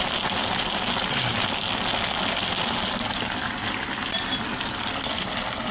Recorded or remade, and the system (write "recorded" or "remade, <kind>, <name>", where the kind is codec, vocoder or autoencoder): recorded